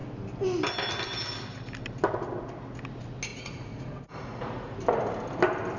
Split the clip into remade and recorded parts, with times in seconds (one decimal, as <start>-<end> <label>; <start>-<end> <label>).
0.0-3.3 recorded; 3.3-4.8 remade; 4.8-5.8 recorded